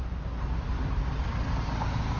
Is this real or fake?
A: real